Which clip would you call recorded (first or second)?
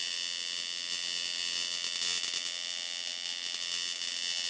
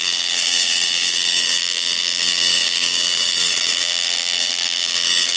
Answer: first